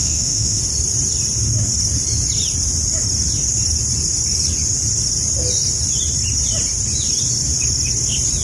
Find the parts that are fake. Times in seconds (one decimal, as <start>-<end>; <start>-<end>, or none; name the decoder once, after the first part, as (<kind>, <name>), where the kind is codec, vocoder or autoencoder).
0.0-0.6 (autoencoder, DAC-VAE)

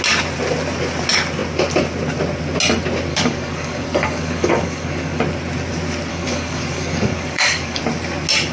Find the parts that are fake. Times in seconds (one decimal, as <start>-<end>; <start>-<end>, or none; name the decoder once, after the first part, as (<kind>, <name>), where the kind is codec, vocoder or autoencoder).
3.1-5.2 (codec, DAC); 6.1-7.8

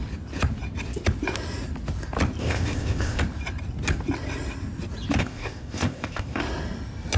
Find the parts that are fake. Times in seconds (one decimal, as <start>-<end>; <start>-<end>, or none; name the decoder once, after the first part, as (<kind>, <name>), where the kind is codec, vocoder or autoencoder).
2.4-3.2 (codec, ZipCodec); 5.2-6.4

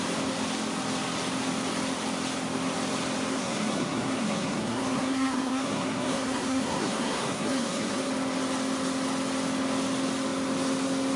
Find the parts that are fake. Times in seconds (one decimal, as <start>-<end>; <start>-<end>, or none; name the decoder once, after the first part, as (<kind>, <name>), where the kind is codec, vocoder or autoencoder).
3.3-8.1 (codec, SNAC)